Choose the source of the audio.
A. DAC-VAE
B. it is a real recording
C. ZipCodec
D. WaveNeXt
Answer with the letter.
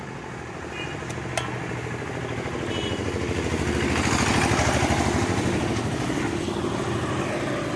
B